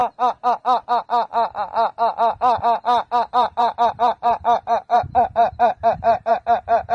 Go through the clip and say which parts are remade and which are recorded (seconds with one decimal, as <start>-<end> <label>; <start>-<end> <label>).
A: 0.0-3.3 recorded; 3.3-6.9 remade